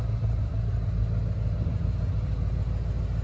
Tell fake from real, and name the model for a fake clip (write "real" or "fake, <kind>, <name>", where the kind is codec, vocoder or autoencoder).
real